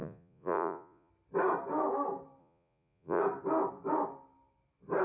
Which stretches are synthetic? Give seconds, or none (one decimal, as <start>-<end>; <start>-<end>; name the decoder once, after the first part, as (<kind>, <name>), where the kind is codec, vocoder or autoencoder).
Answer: 0.0-1.1 (vocoder, Vocos); 2.4-3.2